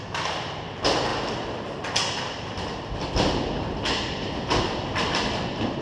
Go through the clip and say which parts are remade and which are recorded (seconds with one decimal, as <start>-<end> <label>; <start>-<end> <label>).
0.0-5.8 recorded